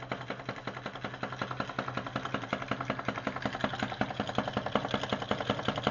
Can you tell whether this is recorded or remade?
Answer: recorded